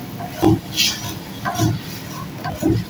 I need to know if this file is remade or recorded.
recorded